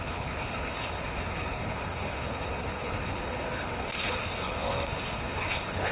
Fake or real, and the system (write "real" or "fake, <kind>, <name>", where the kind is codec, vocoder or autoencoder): fake, codec, HILCodec